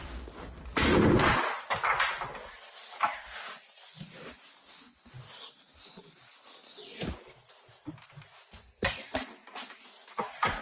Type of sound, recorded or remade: remade